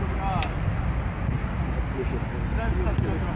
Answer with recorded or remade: recorded